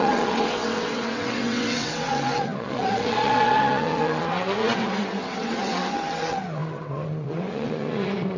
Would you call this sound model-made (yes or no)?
yes